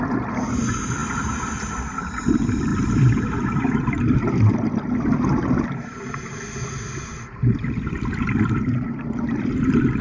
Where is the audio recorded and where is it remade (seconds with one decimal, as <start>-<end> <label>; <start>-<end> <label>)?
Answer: 0.0-10.0 recorded